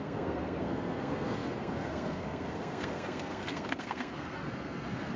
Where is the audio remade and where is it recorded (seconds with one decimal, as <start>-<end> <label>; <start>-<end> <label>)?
0.0-5.2 remade